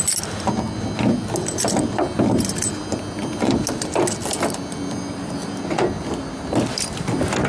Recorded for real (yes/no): yes